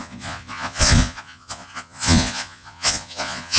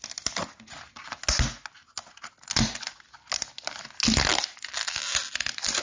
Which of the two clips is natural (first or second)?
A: second